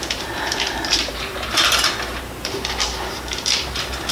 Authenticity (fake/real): fake